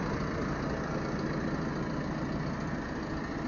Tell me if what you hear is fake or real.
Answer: real